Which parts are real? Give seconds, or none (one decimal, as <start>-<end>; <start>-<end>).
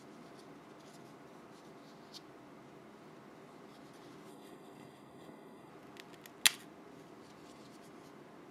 0.0-4.3; 5.7-8.5